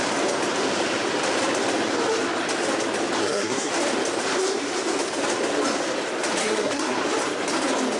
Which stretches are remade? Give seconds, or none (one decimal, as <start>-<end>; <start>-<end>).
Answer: 3.2-3.7; 6.4-7.0